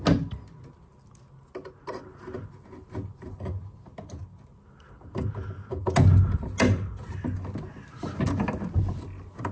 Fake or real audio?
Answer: real